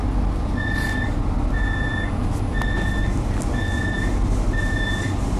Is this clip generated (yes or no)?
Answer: no